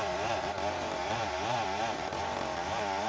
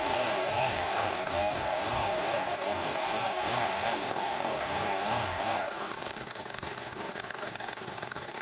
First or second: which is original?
first